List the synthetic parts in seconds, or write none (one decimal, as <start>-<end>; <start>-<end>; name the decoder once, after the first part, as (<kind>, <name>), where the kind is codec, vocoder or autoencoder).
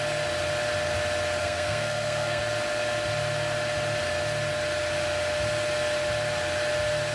1.4-2.4 (codec, SNAC)